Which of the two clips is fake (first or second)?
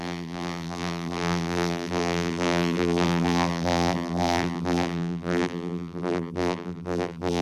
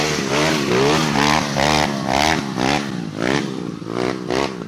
first